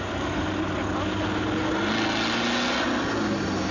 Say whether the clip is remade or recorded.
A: recorded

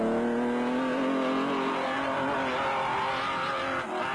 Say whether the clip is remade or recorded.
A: recorded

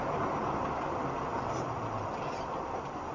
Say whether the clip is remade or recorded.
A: recorded